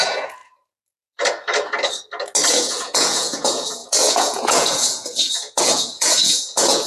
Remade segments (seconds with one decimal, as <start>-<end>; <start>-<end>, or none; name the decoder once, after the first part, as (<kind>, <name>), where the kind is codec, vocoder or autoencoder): 0.0-0.4 (vocoder, Vocos); 2.5-6.9